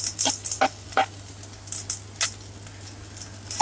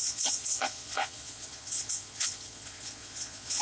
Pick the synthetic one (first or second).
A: second